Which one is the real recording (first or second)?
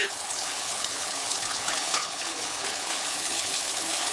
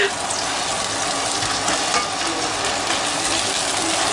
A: second